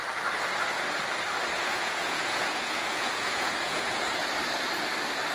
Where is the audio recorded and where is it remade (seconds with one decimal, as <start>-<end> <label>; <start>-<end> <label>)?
0.0-1.6 recorded; 1.6-4.2 remade; 4.2-5.3 recorded

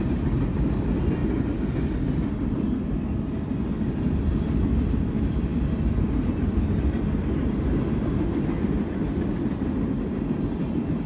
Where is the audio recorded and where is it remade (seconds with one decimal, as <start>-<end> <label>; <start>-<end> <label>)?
0.0-11.1 recorded

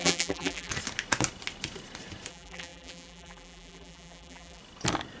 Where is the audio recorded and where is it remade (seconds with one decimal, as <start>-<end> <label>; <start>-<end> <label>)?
0.0-0.7 remade; 0.7-2.3 recorded; 2.3-4.6 remade; 4.6-5.2 recorded

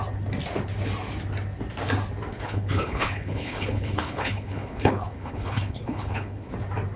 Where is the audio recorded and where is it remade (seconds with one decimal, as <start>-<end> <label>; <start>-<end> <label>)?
0.0-2.3 recorded; 2.3-6.5 remade; 6.5-7.0 recorded

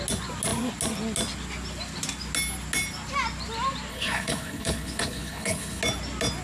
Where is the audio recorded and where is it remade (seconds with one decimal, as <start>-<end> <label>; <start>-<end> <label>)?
0.0-3.9 recorded; 3.9-5.8 remade; 5.8-6.4 recorded

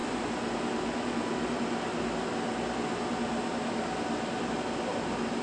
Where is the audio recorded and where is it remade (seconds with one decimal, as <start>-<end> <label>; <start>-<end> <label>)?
0.0-5.4 recorded

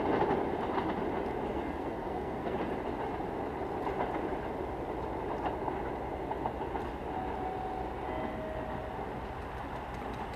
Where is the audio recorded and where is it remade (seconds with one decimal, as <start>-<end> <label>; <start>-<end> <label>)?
0.0-1.5 recorded; 1.5-2.6 remade; 2.6-10.4 recorded